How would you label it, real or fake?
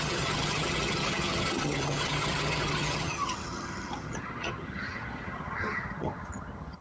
fake